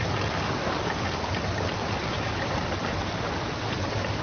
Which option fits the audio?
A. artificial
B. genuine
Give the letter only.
B